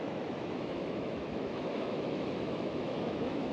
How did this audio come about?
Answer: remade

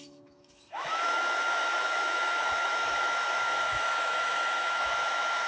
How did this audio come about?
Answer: remade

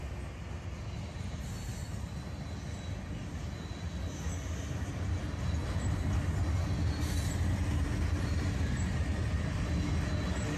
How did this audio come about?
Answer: recorded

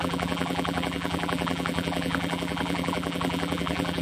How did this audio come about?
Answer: remade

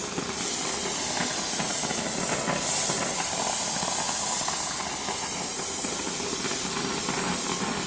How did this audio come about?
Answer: recorded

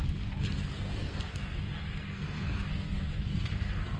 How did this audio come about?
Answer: remade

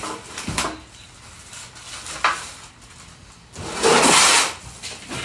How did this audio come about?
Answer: recorded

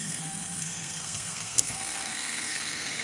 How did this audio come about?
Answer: remade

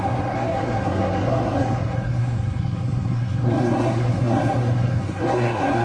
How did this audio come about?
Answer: remade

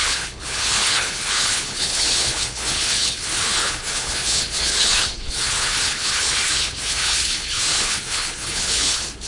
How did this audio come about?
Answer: remade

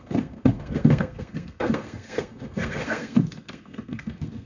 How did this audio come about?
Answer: remade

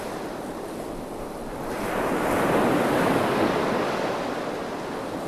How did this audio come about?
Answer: recorded